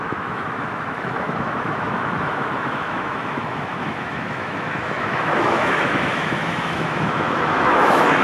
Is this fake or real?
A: fake